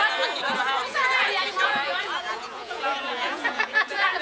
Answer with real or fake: fake